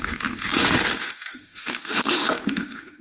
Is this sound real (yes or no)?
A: no